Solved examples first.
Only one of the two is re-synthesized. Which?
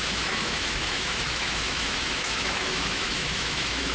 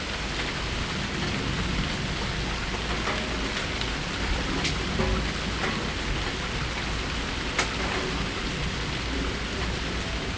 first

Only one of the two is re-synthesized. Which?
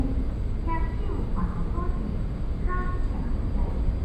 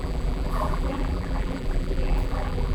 second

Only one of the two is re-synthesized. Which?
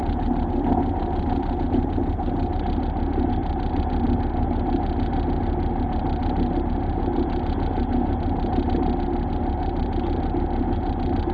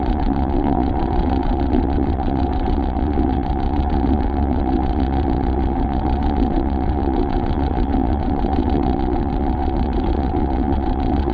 second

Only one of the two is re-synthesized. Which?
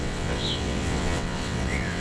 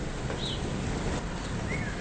first